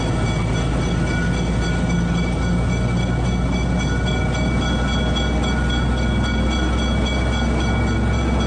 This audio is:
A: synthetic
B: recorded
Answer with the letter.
B